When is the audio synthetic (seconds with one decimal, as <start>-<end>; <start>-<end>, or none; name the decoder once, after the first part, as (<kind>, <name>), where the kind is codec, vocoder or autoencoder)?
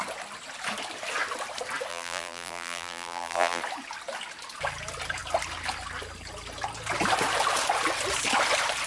1.9-3.6 (vocoder, BigVGAN v2)